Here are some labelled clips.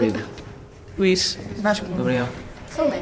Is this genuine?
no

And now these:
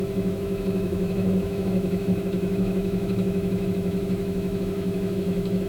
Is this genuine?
no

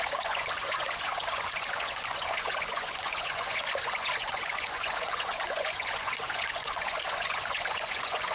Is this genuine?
no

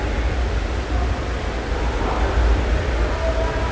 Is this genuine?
yes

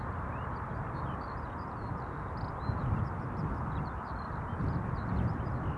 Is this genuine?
yes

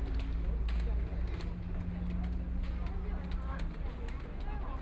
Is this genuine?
yes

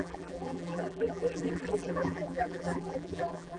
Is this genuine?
no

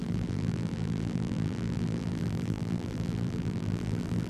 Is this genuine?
no